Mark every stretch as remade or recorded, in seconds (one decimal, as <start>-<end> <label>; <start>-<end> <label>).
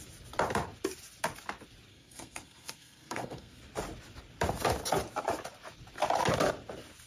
0.0-1.9 recorded; 1.9-3.6 remade; 3.6-7.1 recorded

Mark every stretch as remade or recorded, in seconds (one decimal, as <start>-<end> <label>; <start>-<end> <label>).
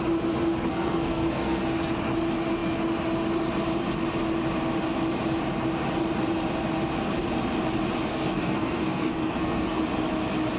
0.0-0.7 recorded; 0.7-1.6 remade; 1.6-8.1 recorded; 8.1-9.8 remade; 9.8-10.6 recorded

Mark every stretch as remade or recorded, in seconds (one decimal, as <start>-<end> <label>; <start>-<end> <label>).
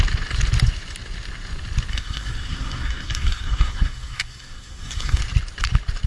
0.0-1.9 recorded; 1.9-5.2 remade; 5.2-6.1 recorded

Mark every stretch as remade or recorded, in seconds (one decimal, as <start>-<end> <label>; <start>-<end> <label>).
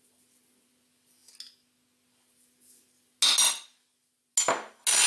0.0-5.1 recorded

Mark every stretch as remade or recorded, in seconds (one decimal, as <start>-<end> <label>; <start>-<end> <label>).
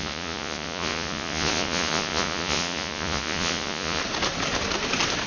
0.0-4.0 remade; 4.0-5.3 recorded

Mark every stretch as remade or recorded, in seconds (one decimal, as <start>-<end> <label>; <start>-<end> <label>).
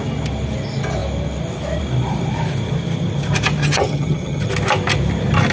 0.0-3.6 recorded; 3.6-4.5 remade; 4.5-5.5 recorded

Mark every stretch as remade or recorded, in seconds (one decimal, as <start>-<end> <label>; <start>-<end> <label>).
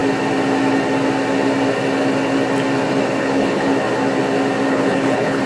0.0-3.2 recorded; 3.2-3.7 remade; 3.7-4.7 recorded; 4.7-5.5 remade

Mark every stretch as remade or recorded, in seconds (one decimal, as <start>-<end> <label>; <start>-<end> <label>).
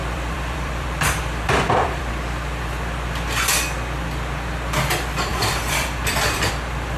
0.0-2.1 remade; 2.1-5.3 recorded; 5.3-6.5 remade; 6.5-7.0 recorded